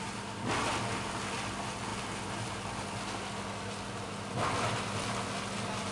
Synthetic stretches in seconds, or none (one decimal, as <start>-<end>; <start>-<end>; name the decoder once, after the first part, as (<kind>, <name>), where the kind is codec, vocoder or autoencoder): none